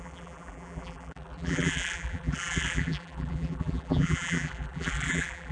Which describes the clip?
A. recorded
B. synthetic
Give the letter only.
B